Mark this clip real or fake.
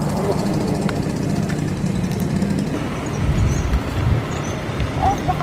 real